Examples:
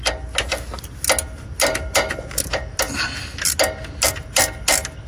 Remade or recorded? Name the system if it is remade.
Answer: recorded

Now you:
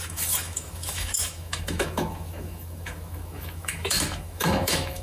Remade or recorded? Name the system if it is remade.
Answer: remade, autoencoder, DAC-VAE